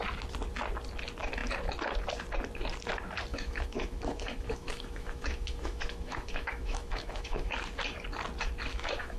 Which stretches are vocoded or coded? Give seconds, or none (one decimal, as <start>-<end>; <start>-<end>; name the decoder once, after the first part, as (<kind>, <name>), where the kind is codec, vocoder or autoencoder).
3.3-7.5 (autoencoder, DAC-VAE); 8.7-9.2